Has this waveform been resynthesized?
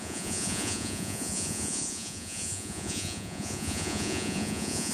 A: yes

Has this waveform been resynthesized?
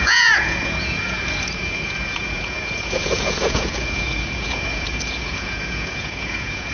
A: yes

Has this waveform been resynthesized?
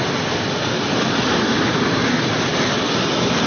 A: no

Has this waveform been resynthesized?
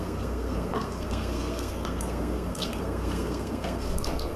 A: yes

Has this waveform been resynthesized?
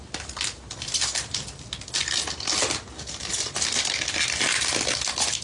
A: no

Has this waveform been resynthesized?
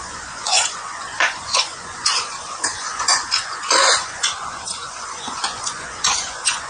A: yes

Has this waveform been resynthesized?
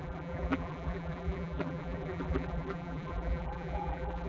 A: yes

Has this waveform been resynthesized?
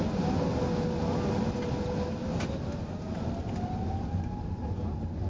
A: no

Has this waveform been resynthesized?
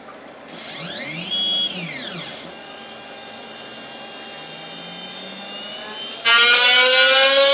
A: no